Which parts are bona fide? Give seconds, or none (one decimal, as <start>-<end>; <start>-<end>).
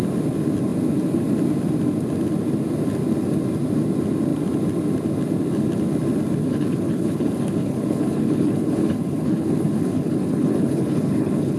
0.0-6.4